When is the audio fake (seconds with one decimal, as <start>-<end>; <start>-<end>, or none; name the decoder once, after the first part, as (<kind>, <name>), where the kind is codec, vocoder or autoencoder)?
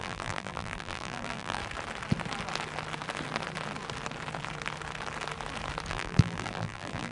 0.0-1.6 (vocoder, BigVGAN v2); 5.9-7.1